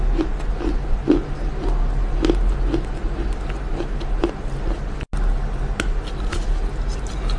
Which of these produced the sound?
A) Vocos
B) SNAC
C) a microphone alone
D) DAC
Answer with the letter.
C